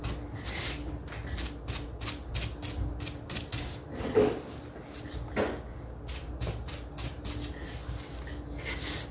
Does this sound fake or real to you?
real